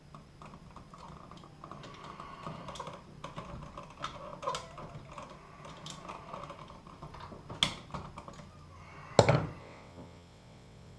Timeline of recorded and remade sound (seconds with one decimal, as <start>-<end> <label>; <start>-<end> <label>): 0.0-9.6 recorded; 9.6-11.0 remade